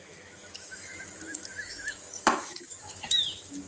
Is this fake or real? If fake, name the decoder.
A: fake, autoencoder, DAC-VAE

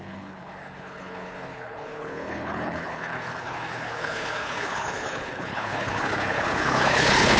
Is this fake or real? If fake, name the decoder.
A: fake, codec, HILCodec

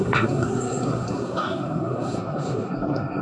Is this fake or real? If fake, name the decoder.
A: fake, codec, SNAC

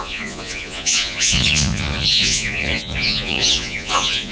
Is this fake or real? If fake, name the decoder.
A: fake, vocoder, Vocos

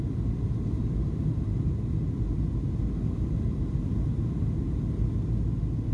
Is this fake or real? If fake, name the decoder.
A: real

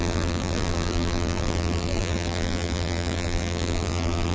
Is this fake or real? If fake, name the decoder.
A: fake, vocoder, BigVGAN v2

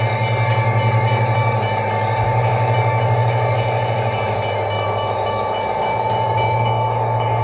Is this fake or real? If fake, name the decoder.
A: fake, codec, DAC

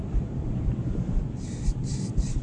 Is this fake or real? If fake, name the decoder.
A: fake, vocoder, BigVGAN v2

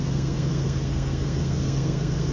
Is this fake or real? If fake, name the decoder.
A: fake, codec, SNAC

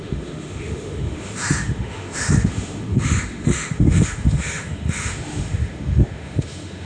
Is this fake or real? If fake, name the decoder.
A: fake, autoencoder, DAC-VAE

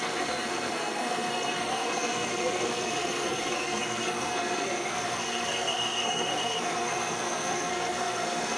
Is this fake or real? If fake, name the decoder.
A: fake, codec, SNAC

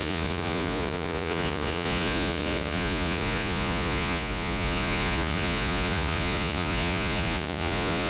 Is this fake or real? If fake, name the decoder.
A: fake, vocoder, Vocos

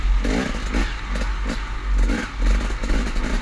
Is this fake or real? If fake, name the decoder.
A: real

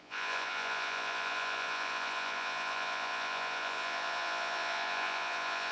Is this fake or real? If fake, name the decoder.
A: fake, vocoder, Vocos